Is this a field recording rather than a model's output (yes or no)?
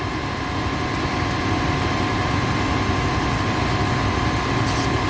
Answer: yes